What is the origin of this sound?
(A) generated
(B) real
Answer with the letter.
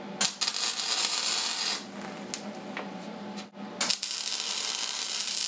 B